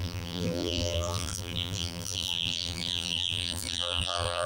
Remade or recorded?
remade